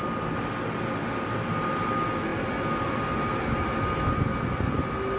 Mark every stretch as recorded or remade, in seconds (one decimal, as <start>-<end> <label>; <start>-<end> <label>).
0.0-5.2 recorded